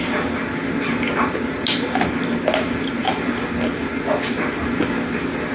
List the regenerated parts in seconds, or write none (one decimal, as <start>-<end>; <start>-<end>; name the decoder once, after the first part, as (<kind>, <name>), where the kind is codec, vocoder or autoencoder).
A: 0.4-2.3 (vocoder, BigVGAN v2)